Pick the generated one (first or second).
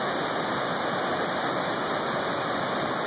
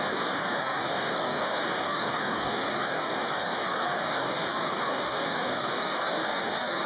second